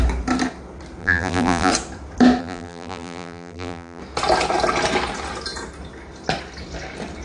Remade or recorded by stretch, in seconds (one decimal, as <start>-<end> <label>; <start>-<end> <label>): 0.0-1.0 recorded; 1.0-1.7 remade; 1.7-2.4 recorded; 2.4-4.0 remade; 4.0-7.2 recorded